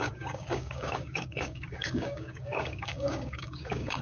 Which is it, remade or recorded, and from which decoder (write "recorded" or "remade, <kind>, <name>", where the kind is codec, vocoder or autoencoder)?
remade, codec, DAC